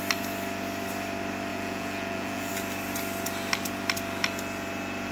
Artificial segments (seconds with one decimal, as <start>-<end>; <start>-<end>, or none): 1.5-2.5

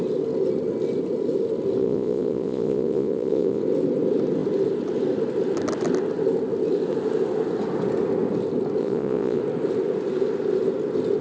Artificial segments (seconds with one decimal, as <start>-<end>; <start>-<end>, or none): 1.8-3.6; 8.8-9.4

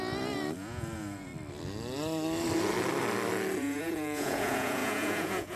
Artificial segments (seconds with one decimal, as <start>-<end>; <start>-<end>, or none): 0.0-1.3; 3.6-5.6

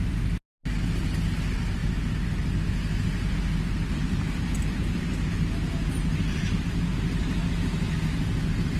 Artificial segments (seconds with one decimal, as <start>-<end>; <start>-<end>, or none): none

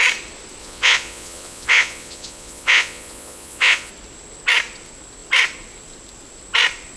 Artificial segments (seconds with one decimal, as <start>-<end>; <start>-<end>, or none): 0.6-3.9